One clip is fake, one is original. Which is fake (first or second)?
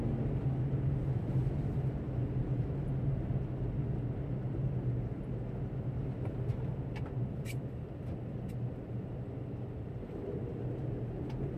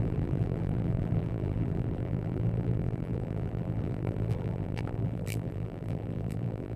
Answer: second